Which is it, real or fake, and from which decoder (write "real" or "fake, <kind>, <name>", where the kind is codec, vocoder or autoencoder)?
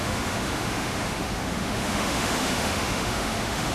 fake, autoencoder, DAC-VAE